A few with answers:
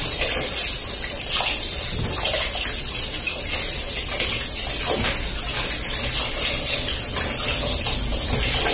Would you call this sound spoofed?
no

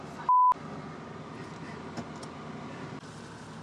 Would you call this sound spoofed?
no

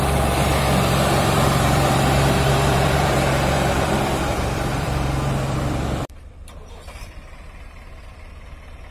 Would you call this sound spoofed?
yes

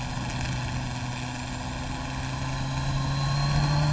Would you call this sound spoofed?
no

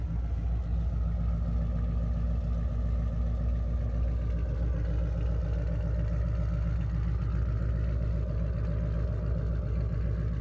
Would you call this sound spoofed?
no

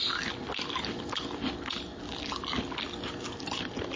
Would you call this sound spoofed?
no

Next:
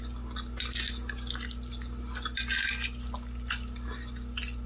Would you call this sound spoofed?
no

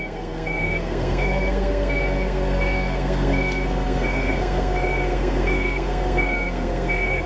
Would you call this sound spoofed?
yes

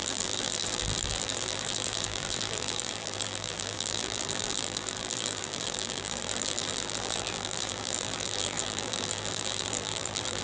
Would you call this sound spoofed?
yes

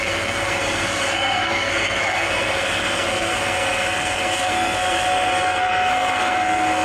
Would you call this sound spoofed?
yes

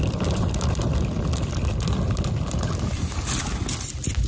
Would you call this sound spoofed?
no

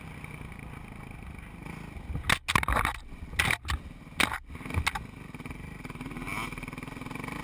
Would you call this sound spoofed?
no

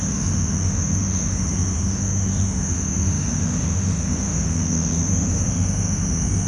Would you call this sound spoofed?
yes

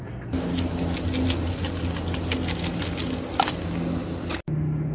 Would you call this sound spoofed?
no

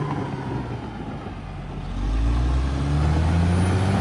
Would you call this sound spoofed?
no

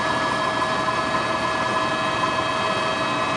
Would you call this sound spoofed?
no